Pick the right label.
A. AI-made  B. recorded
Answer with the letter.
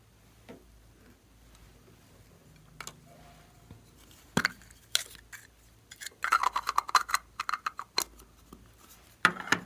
B